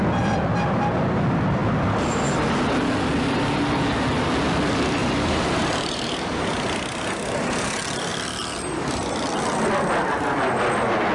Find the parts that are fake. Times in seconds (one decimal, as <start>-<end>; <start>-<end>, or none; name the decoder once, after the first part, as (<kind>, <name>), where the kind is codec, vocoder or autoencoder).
5.0-6.4 (vocoder, BigVGAN v2)